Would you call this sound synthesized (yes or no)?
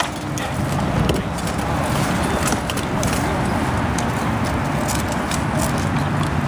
no